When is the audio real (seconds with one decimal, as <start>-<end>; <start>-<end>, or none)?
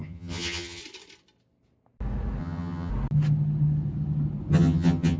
0.8-2.4; 2.9-4.5